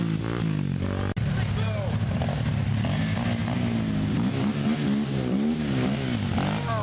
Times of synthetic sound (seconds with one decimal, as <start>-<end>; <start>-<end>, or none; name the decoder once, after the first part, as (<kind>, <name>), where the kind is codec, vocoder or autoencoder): none